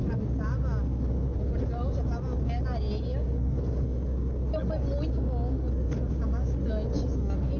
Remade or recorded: recorded